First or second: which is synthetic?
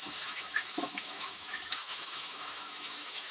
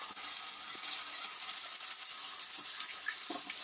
first